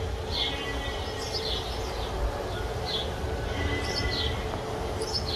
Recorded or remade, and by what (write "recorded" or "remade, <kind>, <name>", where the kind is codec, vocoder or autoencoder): recorded